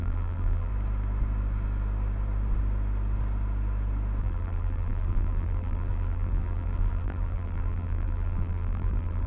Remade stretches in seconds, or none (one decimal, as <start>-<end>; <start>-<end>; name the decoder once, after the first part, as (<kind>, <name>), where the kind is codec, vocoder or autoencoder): 0.0-0.7 (vocoder, BigVGAN v2); 4.2-9.3